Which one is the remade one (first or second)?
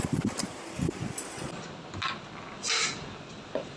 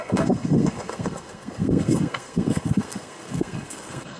second